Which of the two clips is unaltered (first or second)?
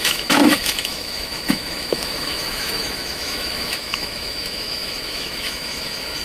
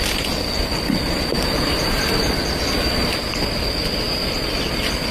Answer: second